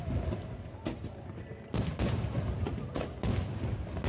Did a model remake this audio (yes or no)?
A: no